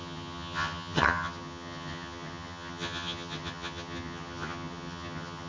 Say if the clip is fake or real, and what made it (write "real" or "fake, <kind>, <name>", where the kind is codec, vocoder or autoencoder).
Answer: fake, vocoder, HiFi-GAN